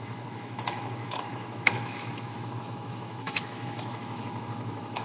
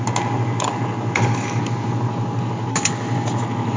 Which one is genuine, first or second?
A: second